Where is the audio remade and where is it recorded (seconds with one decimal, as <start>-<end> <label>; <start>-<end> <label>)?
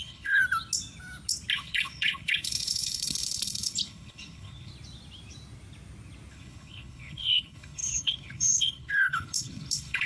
0.0-0.4 remade; 0.4-1.5 recorded; 1.5-4.7 remade; 4.7-6.3 recorded; 6.3-10.1 remade